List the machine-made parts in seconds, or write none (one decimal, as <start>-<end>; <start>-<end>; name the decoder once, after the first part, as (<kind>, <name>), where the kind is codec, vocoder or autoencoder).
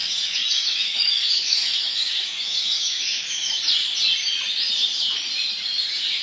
0.0-3.6 (autoencoder, DAC-VAE)